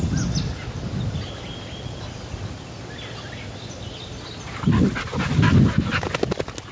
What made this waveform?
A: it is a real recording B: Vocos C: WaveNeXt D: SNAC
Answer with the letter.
A